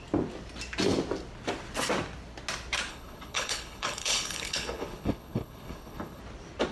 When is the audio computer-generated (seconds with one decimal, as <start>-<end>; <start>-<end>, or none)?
2.9-6.2